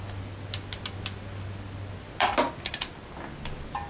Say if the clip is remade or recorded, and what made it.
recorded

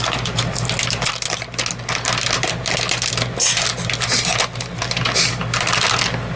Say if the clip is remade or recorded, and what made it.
recorded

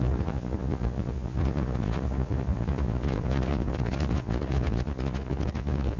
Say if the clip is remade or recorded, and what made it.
remade, vocoder, Vocos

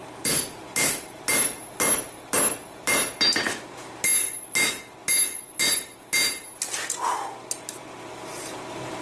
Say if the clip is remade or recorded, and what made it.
recorded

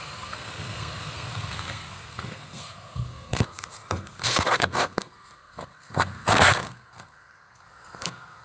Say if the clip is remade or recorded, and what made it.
remade, codec, SNAC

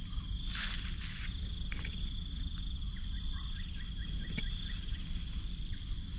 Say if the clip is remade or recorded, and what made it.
recorded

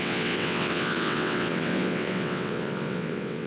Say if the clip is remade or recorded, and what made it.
remade, vocoder, WaveNeXt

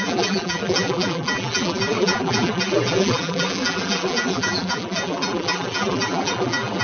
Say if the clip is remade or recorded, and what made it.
remade, vocoder, BigVGAN v2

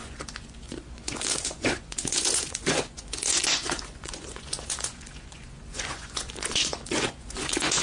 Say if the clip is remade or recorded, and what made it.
remade, vocoder, Vocos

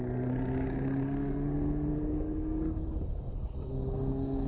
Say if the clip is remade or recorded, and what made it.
remade, codec, SNAC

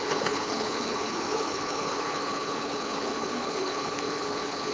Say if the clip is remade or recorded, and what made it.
remade, codec, HILCodec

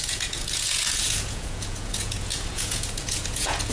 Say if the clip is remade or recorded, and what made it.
remade, vocoder, Vocos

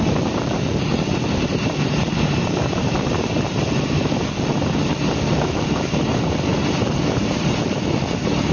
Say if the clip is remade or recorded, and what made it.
remade, vocoder, BigVGAN v2